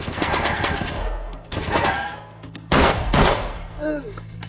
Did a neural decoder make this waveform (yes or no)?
yes